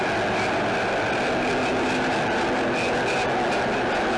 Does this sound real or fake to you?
real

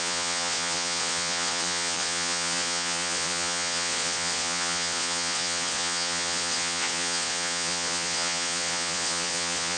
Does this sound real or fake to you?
fake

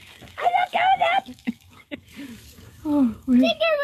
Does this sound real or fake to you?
fake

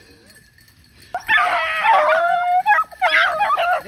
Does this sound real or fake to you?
real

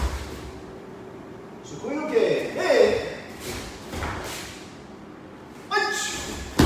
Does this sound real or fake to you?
real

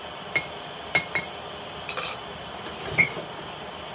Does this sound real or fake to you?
real